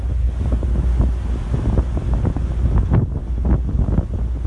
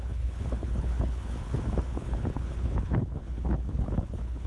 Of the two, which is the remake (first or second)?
second